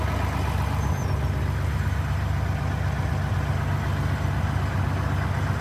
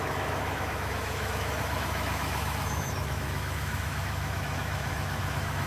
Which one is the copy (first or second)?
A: second